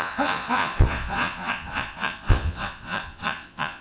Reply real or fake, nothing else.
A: fake